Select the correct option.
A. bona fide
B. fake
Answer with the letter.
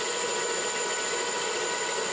A